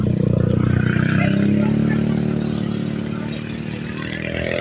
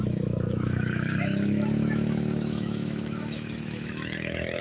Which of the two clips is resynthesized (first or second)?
second